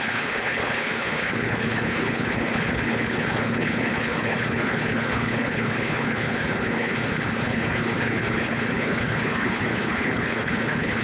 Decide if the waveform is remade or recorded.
remade